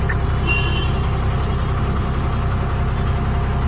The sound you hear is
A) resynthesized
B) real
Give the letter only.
B